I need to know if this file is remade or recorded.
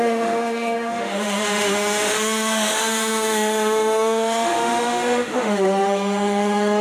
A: remade